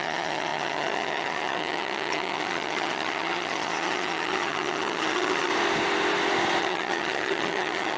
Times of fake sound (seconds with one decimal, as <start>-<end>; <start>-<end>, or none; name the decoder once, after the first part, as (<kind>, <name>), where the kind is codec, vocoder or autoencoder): 0.0-5.5 (vocoder, HiFi-GAN); 6.6-8.0